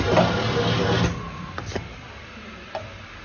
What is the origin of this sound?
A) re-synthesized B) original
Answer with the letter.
B